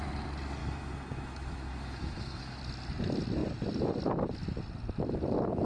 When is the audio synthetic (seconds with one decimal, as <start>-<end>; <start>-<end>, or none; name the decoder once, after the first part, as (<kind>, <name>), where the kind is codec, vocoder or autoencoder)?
0.6-2.6 (autoencoder, DAC-VAE)